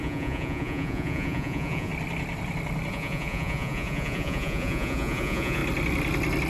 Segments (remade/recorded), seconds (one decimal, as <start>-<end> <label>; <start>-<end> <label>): 0.0-1.9 remade; 1.9-2.9 recorded; 2.9-5.6 remade; 5.6-6.5 recorded